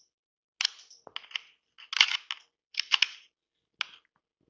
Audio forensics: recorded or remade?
recorded